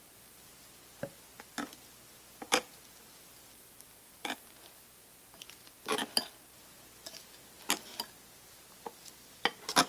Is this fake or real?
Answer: real